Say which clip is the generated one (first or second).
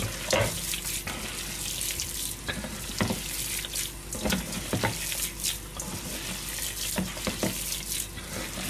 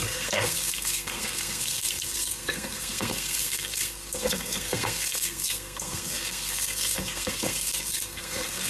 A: second